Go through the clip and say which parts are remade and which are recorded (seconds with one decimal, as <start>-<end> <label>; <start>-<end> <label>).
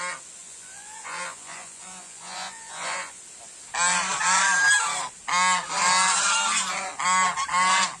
0.0-0.4 recorded; 0.4-3.2 remade; 3.2-8.0 recorded